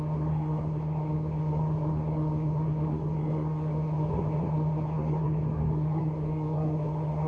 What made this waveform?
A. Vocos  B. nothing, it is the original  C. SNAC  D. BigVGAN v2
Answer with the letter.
C